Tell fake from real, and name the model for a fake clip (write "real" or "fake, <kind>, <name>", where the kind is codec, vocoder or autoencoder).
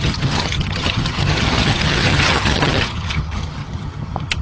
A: fake, vocoder, HiFi-GAN